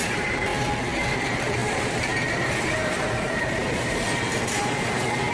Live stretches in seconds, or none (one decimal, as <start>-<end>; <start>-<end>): 0.5-1.1